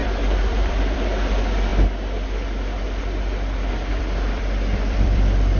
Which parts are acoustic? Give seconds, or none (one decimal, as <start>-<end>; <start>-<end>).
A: 1.7-3.7